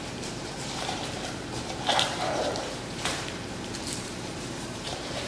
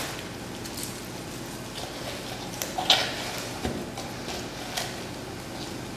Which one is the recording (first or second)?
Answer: second